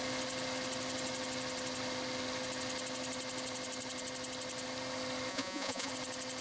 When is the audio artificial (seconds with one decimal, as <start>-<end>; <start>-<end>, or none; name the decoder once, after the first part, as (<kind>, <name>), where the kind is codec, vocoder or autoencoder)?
5.3-5.9 (vocoder, Vocos)